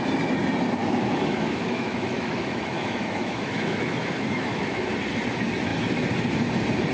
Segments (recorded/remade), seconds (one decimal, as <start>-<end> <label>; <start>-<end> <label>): 0.0-0.8 recorded; 0.8-4.9 remade; 4.9-6.9 recorded